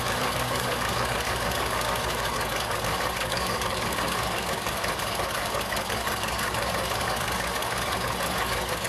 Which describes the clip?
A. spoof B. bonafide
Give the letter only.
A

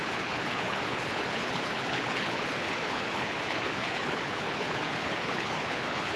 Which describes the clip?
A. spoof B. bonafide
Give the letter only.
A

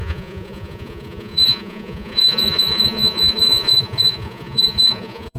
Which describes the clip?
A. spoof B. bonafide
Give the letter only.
A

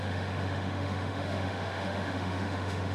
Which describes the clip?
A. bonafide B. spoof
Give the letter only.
B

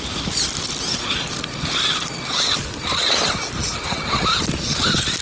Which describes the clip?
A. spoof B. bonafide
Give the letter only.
B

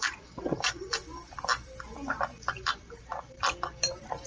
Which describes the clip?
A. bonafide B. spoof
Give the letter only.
B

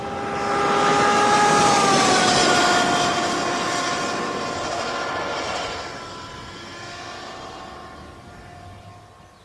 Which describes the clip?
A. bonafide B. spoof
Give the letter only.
A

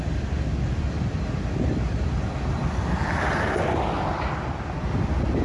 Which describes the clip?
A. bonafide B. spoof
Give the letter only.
A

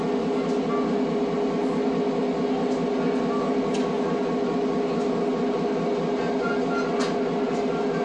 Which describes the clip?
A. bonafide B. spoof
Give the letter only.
A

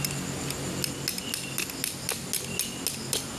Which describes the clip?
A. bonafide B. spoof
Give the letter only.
A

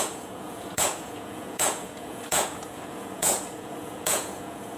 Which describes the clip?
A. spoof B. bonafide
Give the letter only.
A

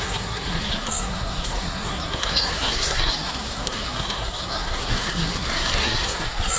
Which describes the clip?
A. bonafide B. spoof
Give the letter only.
B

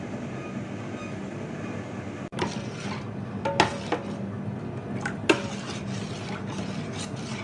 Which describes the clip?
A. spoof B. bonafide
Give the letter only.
B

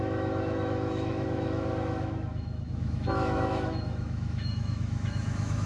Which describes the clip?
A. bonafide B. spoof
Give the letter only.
B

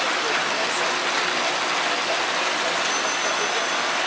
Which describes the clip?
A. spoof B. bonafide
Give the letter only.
B